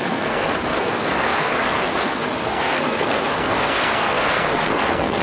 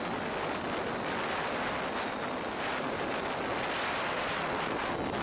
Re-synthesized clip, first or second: first